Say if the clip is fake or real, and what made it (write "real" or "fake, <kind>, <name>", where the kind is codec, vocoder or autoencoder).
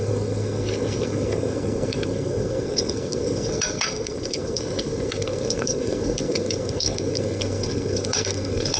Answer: fake, codec, SNAC